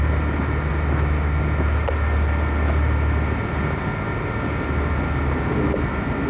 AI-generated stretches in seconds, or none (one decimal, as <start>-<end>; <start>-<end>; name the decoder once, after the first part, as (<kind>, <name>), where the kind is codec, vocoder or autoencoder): none